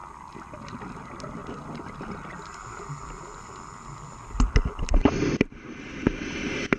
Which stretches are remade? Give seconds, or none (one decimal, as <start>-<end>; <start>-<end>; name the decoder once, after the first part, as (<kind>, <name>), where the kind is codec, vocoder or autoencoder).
1.4-5.5 (vocoder, BigVGAN v2)